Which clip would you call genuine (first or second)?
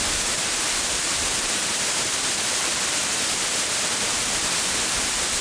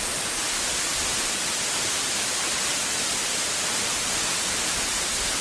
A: second